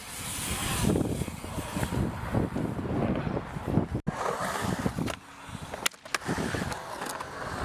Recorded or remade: recorded